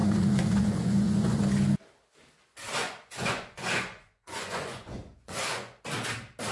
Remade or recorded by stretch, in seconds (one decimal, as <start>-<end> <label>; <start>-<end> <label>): 0.0-1.4 remade; 1.4-2.8 recorded; 2.8-5.8 remade; 5.8-6.5 recorded